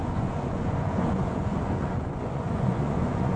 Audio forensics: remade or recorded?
remade